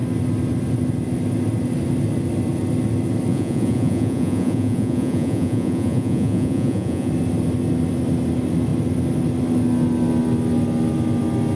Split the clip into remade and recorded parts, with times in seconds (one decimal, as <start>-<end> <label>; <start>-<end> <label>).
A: 0.0-3.3 recorded; 3.3-7.1 remade; 7.1-11.6 recorded